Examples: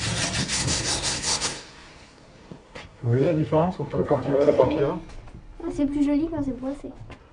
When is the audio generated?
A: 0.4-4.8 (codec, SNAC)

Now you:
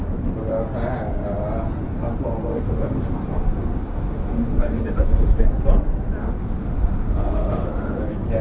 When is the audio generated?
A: 2.5-5.4 (autoencoder, DAC-VAE); 6.2-8.0

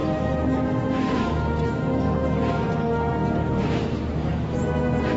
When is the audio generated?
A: none

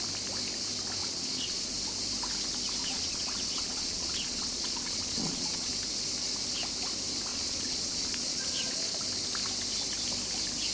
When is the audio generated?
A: 1.0-1.7 (vocoder, Vocos); 2.8-5.7; 7.3-9.0

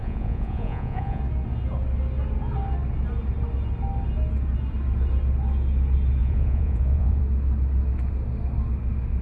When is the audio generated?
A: 0.0-1.2 (vocoder, Vocos); 6.2-7.2

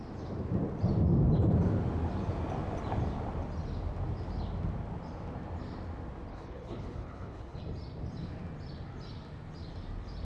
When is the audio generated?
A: 6.3-7.6 (codec, HILCodec)

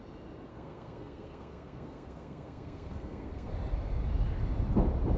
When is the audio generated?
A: 0.5-3.5 (codec, SNAC)

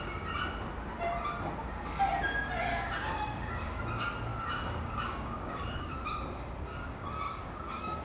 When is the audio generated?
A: 2.7-3.8 (codec, DAC); 4.3-6.0; 6.7-8.0